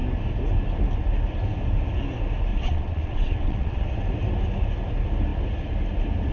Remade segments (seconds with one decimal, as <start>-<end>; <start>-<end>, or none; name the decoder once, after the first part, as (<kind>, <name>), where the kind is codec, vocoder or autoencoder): 2.5-3.8 (vocoder, WaveNeXt)